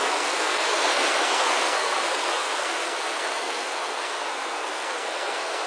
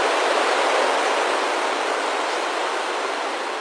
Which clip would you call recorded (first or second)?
second